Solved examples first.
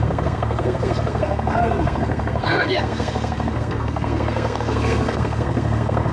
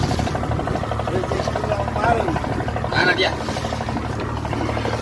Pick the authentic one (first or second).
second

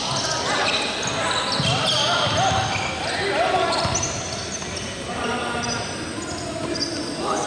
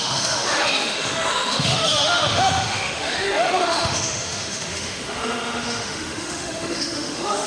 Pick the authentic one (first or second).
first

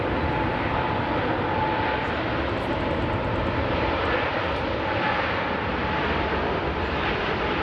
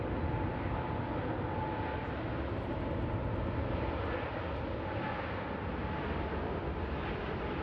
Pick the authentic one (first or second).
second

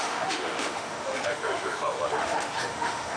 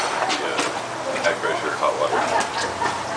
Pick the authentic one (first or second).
second